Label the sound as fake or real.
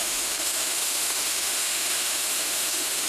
fake